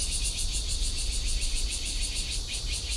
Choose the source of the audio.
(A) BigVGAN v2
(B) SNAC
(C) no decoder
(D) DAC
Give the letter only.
C